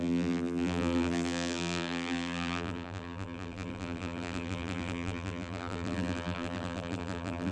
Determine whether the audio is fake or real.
fake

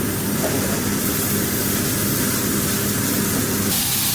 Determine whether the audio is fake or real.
fake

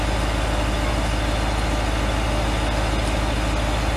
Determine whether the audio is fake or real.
real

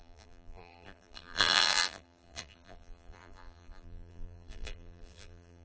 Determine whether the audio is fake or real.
fake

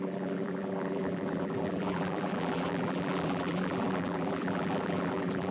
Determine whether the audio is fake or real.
fake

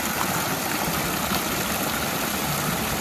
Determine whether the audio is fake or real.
real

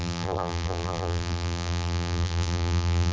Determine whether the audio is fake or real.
fake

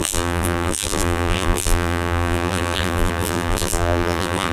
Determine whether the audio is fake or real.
fake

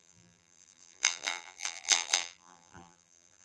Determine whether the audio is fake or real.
fake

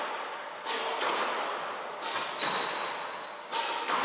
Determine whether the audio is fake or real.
real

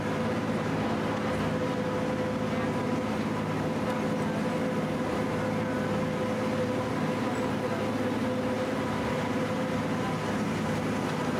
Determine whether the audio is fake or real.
real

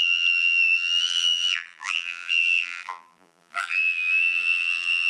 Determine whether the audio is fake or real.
fake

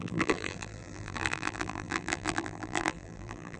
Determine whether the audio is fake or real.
fake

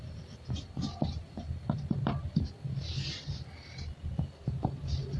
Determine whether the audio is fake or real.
fake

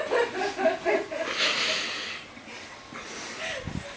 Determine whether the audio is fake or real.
real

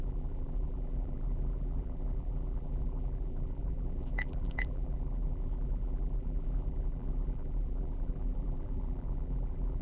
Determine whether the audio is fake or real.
fake